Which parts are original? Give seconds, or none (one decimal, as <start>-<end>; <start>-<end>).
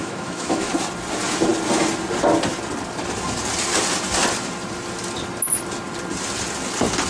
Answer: 0.7-7.1